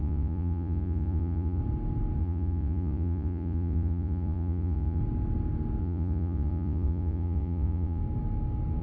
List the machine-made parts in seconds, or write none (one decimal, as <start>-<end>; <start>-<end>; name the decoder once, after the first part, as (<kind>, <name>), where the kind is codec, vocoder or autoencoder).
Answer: 0.0-1.6 (vocoder, Vocos); 2.2-5.0; 5.8-8.0